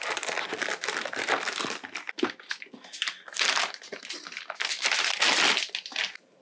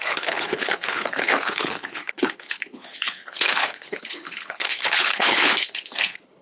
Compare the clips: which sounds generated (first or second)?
second